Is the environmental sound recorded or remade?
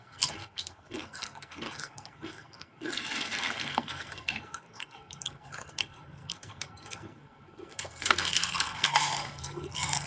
remade